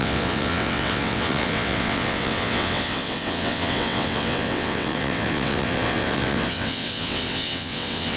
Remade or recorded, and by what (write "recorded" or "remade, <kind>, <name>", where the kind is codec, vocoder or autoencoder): remade, vocoder, WaveNeXt